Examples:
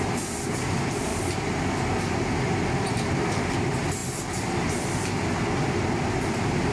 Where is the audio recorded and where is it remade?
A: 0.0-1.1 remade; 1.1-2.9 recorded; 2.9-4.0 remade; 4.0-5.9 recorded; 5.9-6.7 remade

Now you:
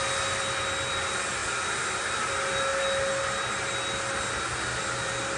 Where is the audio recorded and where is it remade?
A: 0.0-5.4 recorded

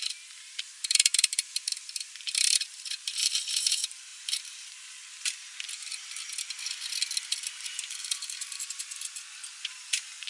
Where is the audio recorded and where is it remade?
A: 0.0-5.4 remade; 5.4-7.4 recorded; 7.4-10.3 remade

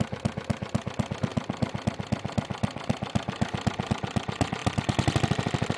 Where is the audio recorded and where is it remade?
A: 0.0-5.8 recorded

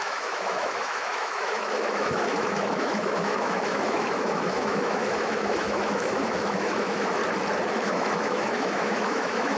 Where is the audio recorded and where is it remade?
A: 0.0-7.2 remade; 7.2-7.7 recorded; 7.7-9.6 remade